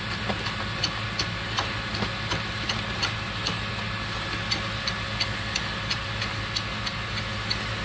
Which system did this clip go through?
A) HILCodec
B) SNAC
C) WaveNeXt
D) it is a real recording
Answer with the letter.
D